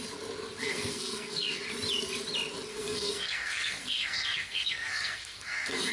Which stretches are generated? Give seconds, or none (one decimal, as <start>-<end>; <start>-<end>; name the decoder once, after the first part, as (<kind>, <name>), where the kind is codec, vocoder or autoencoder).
0.6-1.6 (codec, SNAC); 2.7-5.9